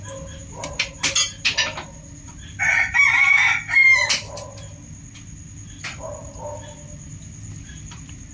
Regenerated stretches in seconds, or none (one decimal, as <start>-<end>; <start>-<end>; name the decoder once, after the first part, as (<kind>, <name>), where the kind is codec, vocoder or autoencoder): none

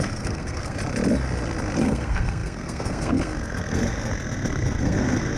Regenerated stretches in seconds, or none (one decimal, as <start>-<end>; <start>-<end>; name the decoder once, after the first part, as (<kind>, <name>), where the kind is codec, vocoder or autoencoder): 0.0-0.8 (codec, SNAC); 1.8-5.4

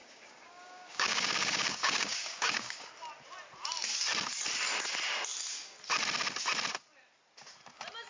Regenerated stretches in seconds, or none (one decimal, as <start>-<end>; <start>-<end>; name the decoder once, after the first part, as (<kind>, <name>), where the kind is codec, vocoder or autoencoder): 0.0-2.9 (codec, DAC)

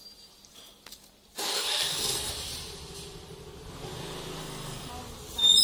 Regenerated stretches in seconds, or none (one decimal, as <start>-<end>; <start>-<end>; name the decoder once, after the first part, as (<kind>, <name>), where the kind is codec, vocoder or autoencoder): 1.5-2.3 (codec, SNAC); 4.4-4.9